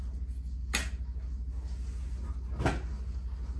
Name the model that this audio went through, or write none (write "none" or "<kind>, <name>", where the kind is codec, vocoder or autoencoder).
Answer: none